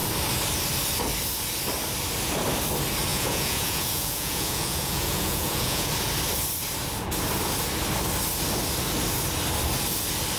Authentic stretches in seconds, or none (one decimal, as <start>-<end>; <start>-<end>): 0.0-3.1; 5.9-10.4